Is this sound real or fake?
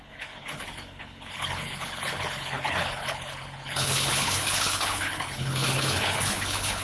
fake